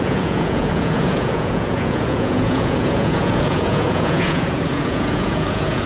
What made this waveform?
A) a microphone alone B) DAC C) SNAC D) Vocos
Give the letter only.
D